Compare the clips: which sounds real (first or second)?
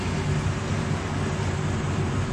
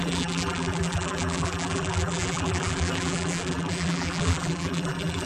first